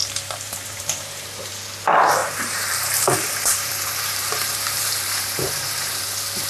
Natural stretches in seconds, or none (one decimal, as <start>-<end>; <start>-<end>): 1.5-2.2; 6.0-6.5